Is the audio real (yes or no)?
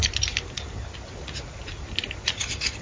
yes